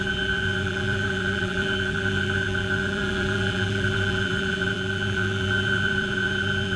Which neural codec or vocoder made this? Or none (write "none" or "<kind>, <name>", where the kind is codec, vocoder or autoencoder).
vocoder, BigVGAN v2